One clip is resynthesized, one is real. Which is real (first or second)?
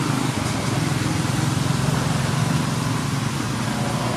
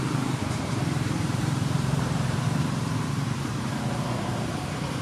first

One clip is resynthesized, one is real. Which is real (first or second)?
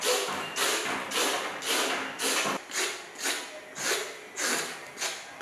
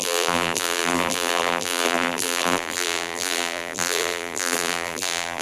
first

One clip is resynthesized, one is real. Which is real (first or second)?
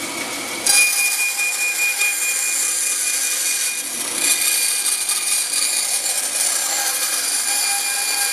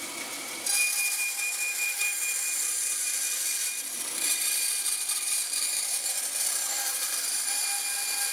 first